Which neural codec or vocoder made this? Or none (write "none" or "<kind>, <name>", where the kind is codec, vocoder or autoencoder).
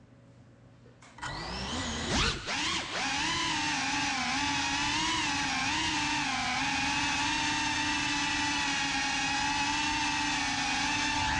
none